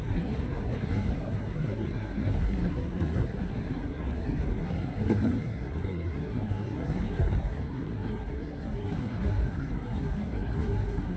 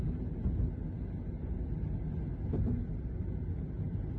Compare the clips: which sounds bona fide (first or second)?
second